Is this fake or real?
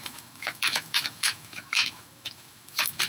fake